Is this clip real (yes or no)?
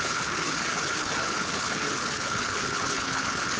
no